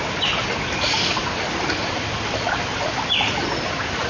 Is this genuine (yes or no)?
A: yes